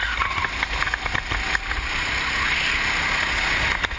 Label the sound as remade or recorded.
recorded